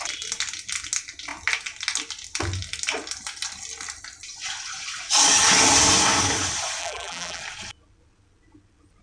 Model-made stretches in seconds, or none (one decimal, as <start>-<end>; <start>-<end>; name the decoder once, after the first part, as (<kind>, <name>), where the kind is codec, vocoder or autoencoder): 6.8-7.4 (vocoder, BigVGAN v2)